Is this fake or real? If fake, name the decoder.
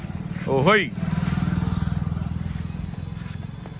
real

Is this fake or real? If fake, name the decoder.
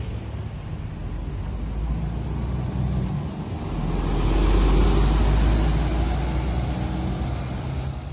real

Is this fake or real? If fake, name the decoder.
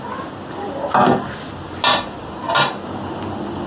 real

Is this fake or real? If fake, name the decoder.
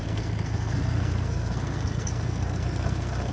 fake, codec, SNAC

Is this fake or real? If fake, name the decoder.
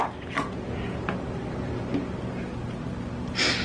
real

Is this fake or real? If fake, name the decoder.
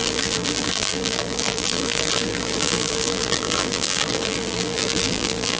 fake, vocoder, BigVGAN v2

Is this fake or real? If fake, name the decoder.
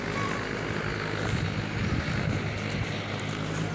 real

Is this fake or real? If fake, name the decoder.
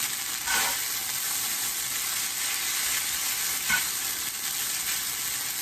real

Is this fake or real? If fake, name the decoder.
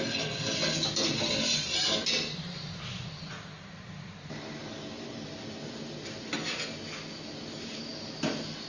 real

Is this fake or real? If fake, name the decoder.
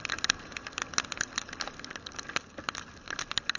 real